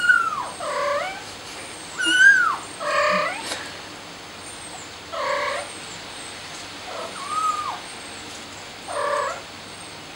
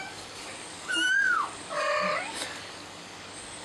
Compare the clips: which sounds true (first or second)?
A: first